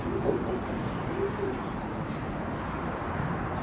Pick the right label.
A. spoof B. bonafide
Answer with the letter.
B